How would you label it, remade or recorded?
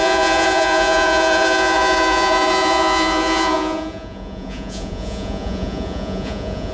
remade